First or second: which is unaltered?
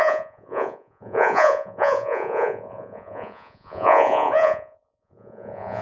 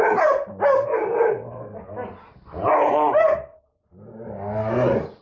second